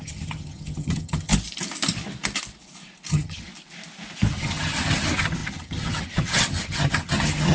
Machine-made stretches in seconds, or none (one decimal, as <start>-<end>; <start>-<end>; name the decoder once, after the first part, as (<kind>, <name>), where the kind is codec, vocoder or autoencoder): 0.0-1.3 (vocoder, HiFi-GAN); 3.1-3.5; 4.3-7.5